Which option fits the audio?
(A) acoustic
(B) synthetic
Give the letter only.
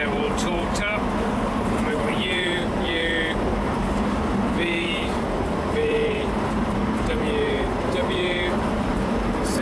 B